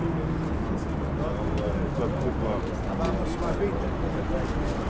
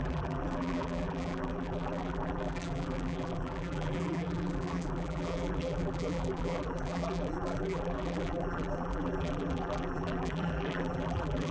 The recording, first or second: first